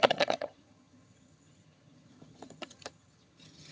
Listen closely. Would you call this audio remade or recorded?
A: remade